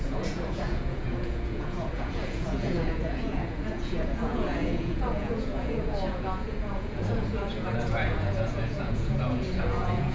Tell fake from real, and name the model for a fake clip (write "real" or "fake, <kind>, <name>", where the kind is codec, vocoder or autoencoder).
fake, vocoder, Vocos